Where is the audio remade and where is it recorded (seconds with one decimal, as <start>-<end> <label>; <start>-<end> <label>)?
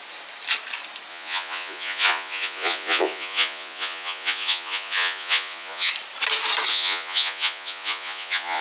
0.0-1.1 recorded; 1.1-5.9 remade; 5.9-6.7 recorded; 6.7-8.6 remade